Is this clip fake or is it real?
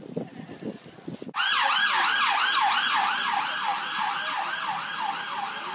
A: real